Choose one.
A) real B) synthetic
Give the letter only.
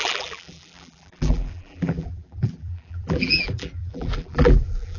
B